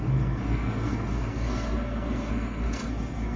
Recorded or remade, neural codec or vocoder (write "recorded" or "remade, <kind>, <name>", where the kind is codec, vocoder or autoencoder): remade, codec, SNAC